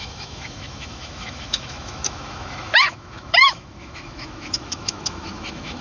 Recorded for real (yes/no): no